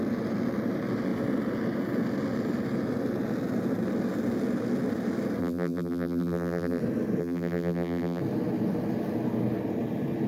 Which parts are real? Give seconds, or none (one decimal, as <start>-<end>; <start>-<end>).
0.0-5.4; 6.8-7.2; 8.2-10.3